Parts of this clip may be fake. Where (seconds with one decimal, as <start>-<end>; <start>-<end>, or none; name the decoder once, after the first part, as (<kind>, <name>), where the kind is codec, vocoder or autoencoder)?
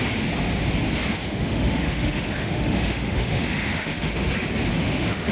1.1-4.3 (autoencoder, DAC-VAE); 4.7-5.3